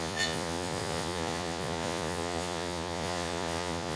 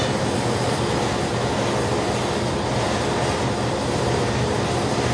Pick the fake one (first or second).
first